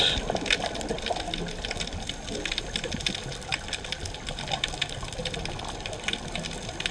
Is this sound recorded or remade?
recorded